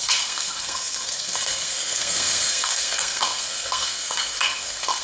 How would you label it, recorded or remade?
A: remade